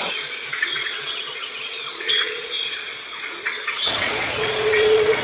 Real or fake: fake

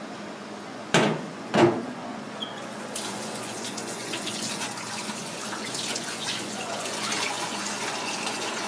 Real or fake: fake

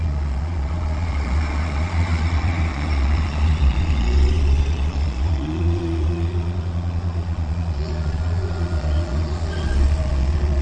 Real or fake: fake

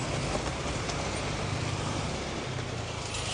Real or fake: real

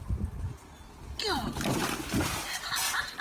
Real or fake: real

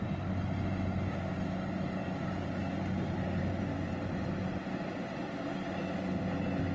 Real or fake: real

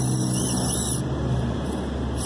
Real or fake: real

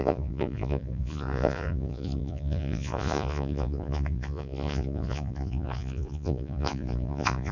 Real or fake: fake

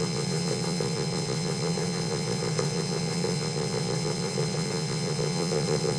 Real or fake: fake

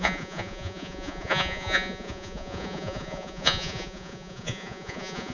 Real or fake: fake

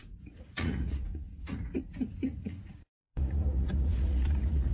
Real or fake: fake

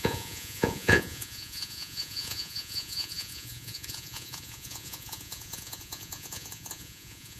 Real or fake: fake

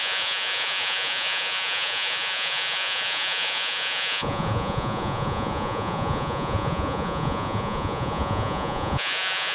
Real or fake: fake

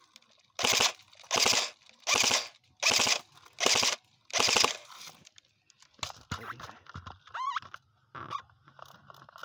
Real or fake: real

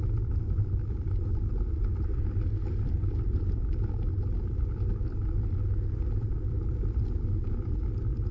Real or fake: real